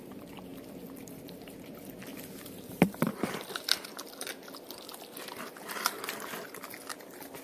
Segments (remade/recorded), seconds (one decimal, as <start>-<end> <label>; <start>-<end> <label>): 0.0-7.4 remade